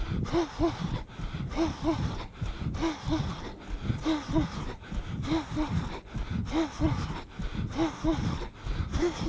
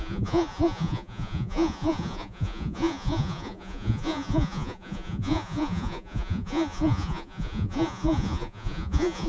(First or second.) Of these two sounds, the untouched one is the first